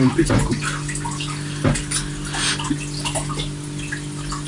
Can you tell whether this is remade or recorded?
recorded